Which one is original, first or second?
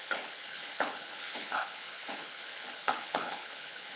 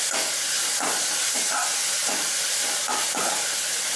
second